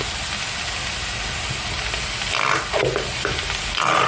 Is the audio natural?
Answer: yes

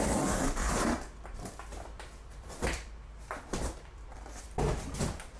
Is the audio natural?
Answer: no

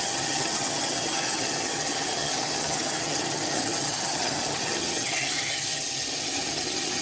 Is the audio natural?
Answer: no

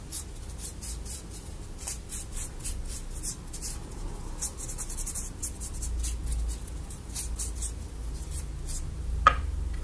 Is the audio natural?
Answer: yes